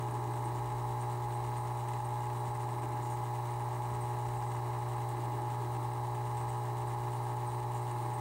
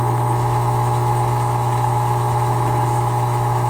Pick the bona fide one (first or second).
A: first